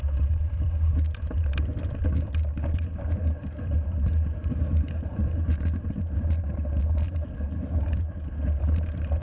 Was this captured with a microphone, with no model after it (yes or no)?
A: no